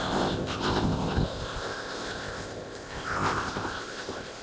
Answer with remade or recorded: remade